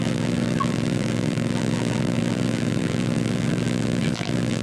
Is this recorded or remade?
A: remade